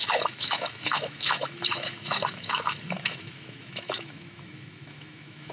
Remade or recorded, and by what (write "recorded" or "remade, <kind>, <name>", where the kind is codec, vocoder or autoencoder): remade, autoencoder, DAC-VAE